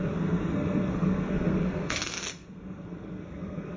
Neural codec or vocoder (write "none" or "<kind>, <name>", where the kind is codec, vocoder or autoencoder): codec, SNAC